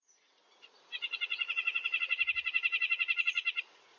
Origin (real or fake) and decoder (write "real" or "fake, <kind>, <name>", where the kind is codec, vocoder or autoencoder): fake, vocoder, Vocos